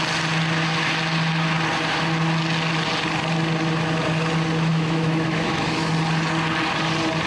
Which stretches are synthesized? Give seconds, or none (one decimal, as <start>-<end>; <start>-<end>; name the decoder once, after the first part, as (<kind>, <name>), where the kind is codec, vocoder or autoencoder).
4.7-5.9 (autoencoder, DAC-VAE)